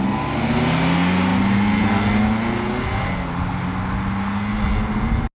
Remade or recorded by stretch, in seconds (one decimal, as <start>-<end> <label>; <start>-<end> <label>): 0.0-5.4 recorded